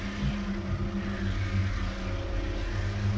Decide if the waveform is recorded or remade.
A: recorded